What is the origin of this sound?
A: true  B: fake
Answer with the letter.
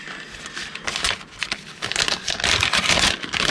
A